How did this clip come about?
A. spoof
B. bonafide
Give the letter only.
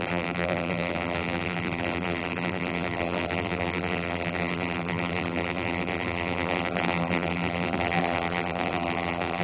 A